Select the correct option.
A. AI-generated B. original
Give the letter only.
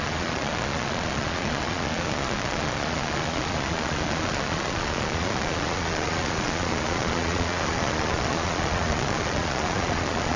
A